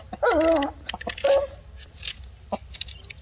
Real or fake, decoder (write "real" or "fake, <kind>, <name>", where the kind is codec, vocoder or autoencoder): real